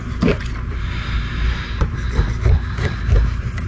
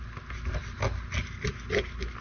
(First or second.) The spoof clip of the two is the first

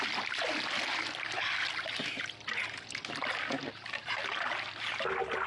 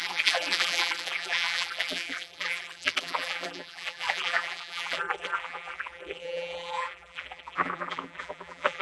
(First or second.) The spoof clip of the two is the second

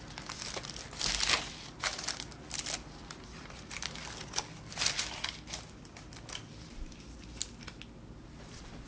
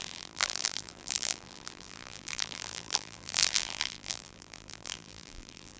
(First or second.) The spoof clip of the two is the second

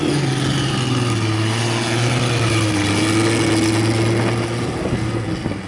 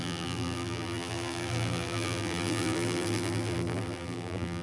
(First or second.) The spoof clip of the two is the second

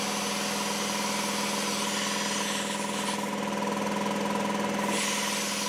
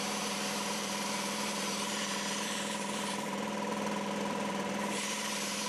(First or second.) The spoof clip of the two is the second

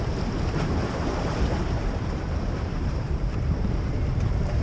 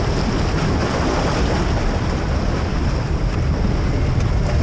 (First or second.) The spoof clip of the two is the first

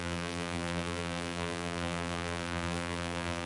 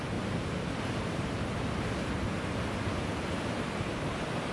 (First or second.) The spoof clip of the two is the first